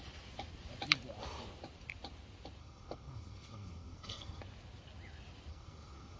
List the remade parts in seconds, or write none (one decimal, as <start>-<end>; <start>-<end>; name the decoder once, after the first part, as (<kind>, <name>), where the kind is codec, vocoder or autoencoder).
2.6-4.4 (codec, SNAC); 5.5-6.2